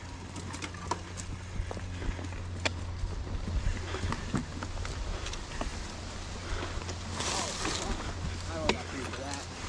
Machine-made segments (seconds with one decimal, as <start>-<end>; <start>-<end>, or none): none